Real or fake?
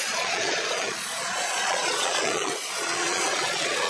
fake